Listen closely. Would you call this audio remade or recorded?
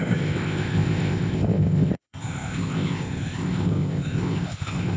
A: remade